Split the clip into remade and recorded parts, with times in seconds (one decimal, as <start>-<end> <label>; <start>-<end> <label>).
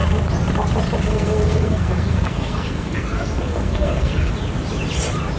0.0-1.1 recorded; 1.1-4.3 remade; 4.3-5.4 recorded